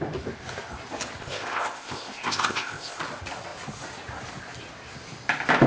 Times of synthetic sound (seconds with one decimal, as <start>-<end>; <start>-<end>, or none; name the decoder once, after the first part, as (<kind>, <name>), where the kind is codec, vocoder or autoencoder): 1.2-3.0 (codec, ZipCodec)